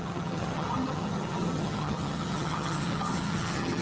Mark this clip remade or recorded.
remade